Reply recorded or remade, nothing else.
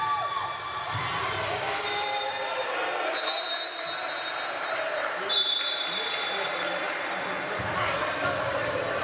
recorded